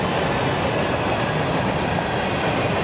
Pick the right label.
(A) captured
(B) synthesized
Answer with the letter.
A